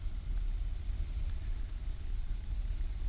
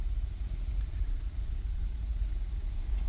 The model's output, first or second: second